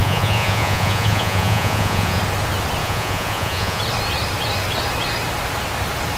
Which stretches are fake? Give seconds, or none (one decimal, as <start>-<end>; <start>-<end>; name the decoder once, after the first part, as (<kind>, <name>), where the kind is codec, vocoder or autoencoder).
0.0-2.2 (vocoder, Vocos); 2.8-3.8